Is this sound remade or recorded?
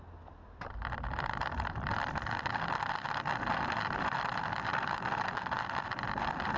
remade